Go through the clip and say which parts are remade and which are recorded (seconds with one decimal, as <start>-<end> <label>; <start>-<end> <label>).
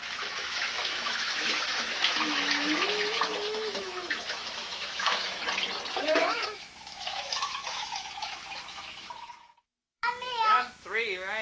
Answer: 0.0-5.4 remade; 5.4-5.9 recorded; 5.9-11.4 remade